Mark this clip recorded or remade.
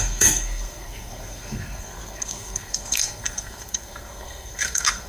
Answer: remade